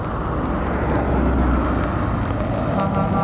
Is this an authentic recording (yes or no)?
yes